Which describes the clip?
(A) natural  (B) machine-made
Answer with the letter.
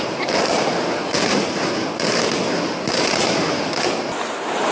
A